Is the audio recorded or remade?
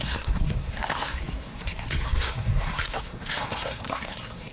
remade